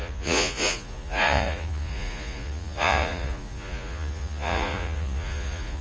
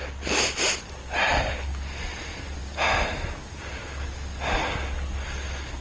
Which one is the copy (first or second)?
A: first